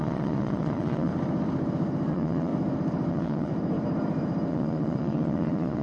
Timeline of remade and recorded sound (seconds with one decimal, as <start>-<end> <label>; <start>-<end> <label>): 0.0-1.1 remade; 1.1-2.1 recorded; 2.1-2.5 remade; 2.5-3.1 recorded; 3.1-3.5 remade; 3.5-4.5 recorded; 4.5-5.8 remade